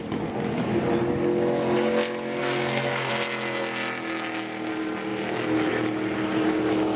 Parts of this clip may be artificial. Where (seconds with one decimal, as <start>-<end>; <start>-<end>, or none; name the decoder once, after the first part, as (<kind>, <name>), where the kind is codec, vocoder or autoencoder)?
2.4-3.1 (codec, SNAC)